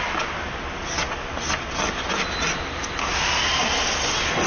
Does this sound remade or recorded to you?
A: recorded